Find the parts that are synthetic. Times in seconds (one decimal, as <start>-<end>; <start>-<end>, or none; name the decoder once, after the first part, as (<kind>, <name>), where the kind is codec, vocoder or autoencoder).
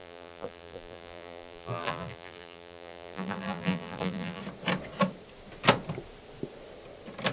0.0-4.4 (vocoder, BigVGAN v2)